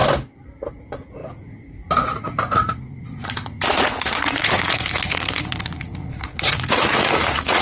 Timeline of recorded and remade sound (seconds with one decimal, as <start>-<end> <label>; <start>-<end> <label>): 0.0-0.7 recorded; 0.7-7.6 remade